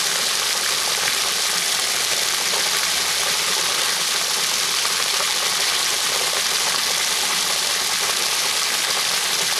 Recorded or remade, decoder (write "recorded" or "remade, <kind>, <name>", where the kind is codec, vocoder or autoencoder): recorded